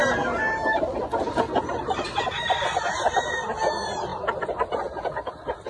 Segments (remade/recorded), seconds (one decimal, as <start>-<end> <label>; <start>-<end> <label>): 0.0-5.7 recorded